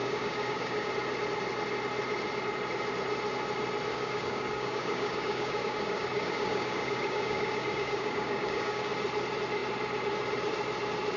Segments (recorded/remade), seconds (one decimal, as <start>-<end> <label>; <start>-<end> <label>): 0.0-0.9 remade; 0.9-3.9 recorded; 3.9-8.9 remade; 8.9-11.2 recorded